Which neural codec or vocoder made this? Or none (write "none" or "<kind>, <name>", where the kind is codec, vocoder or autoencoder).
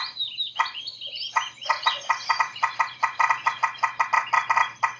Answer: none